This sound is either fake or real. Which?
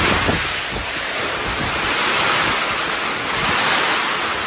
real